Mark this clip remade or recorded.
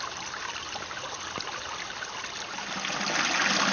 recorded